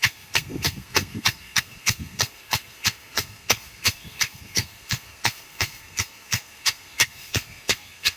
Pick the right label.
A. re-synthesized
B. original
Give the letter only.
A